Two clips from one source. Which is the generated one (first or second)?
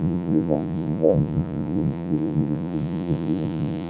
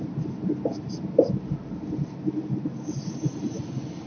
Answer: first